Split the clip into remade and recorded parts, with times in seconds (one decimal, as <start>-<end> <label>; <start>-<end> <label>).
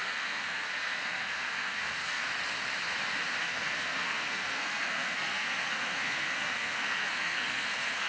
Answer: 0.0-2.2 remade; 2.2-3.4 recorded; 3.4-8.1 remade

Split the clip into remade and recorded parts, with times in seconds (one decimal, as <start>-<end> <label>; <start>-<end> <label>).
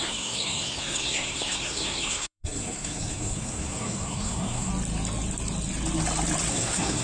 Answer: 0.0-4.7 remade; 4.7-6.5 recorded; 6.5-7.0 remade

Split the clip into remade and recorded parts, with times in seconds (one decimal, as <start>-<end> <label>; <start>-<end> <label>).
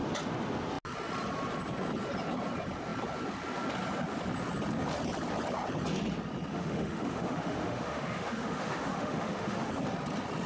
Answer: 0.0-6.5 recorded; 6.5-9.7 remade; 9.7-10.5 recorded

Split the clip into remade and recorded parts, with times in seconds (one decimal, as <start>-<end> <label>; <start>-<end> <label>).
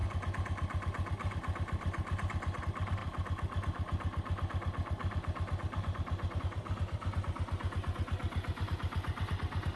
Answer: 0.0-9.8 recorded